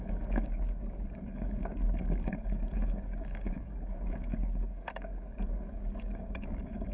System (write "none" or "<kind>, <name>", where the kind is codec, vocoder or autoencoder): codec, DAC